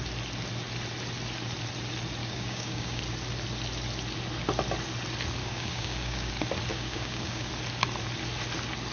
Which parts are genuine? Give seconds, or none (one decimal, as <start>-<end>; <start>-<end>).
0.0-2.2; 3.0-5.4; 6.3-6.7; 7.5-8.9